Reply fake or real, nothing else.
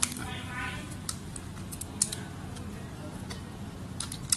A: real